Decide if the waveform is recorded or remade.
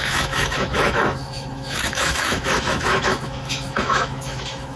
remade